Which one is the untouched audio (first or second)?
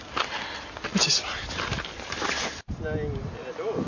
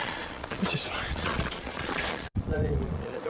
first